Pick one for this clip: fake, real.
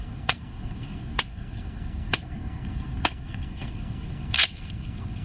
fake